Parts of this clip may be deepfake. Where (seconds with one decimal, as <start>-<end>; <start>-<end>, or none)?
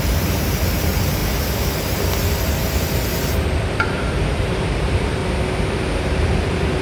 0.0-1.2; 4.3-5.2; 6.0-6.8